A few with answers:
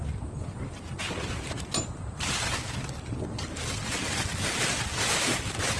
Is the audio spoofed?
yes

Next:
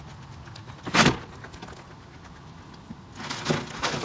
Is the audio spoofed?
no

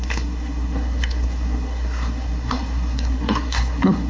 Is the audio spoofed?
yes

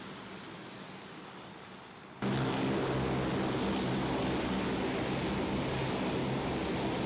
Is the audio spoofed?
no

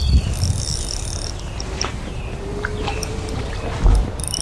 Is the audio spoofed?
no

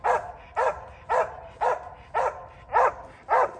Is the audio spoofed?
no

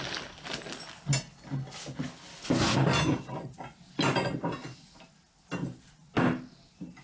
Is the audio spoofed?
no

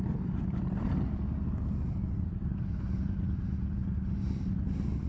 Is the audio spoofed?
no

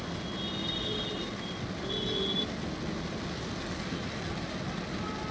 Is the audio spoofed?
no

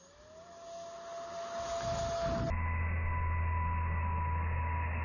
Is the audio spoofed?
no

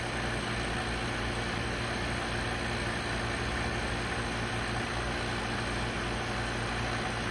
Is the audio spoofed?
no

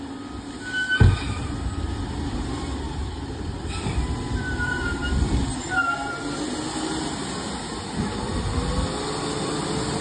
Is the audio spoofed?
no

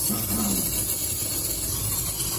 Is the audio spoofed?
no